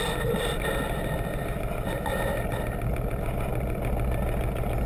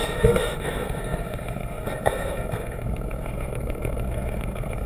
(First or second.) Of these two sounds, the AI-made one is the second